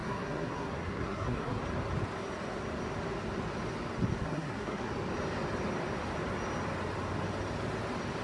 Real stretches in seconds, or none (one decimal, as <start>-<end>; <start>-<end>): 1.6-4.2; 4.9-8.2